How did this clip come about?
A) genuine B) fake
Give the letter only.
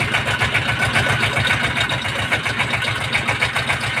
A